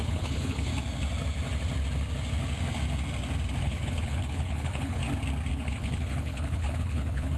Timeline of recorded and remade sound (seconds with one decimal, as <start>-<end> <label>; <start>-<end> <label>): 0.0-0.7 remade; 0.7-3.6 recorded; 3.6-5.0 remade; 5.0-5.5 recorded; 5.5-7.4 remade